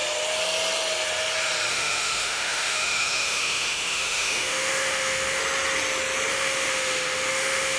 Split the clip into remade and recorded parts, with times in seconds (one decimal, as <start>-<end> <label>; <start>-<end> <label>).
0.0-1.7 recorded; 1.7-5.4 remade; 5.4-6.3 recorded; 6.3-7.8 remade